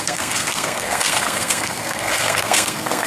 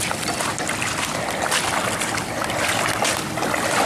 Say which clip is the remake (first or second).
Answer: first